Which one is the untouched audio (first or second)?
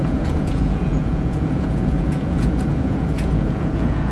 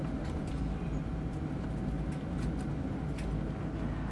second